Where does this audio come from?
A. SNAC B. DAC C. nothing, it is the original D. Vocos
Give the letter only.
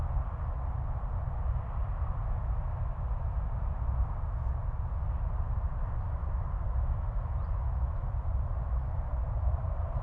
C